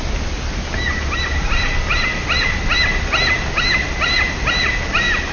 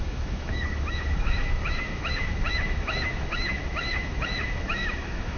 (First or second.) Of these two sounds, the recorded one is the first